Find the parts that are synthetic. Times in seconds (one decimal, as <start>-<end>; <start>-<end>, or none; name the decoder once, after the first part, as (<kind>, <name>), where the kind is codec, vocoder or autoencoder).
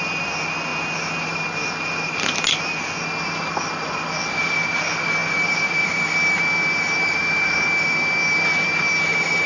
none